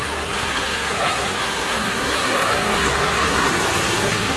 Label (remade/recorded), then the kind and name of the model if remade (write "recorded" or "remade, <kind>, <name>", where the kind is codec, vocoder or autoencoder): remade, codec, SNAC